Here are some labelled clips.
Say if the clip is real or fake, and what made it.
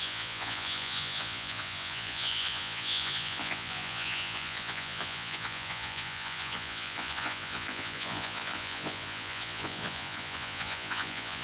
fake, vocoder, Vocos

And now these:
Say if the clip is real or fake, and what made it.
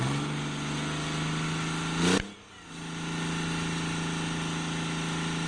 real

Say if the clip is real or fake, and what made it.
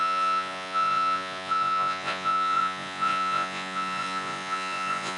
fake, vocoder, Vocos